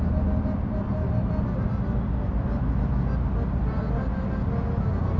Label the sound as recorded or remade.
recorded